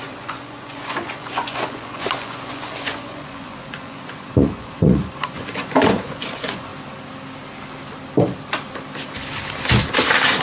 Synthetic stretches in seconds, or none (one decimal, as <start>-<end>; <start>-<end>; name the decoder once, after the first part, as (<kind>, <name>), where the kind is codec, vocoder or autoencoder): 0.0-6.7 (vocoder, Vocos)